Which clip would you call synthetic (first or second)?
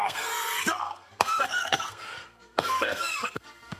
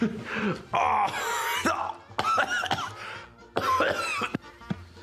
first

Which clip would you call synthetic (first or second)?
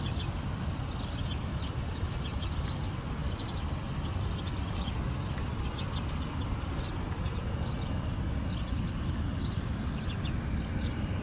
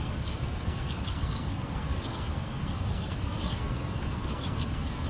second